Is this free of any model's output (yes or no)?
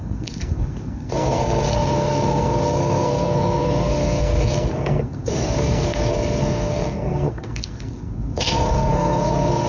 no